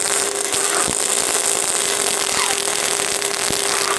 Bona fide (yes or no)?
yes